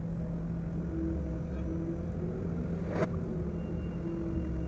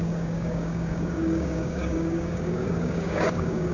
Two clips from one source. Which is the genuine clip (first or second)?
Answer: first